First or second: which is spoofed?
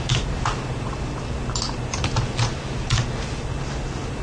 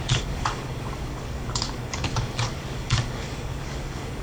second